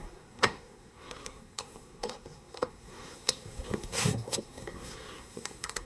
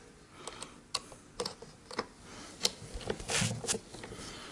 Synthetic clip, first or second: first